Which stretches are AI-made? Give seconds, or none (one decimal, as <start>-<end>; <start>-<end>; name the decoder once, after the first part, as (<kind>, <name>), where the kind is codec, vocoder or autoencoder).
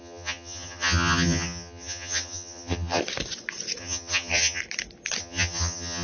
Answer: 0.0-3.0 (vocoder, HiFi-GAN); 3.8-4.6; 5.2-6.0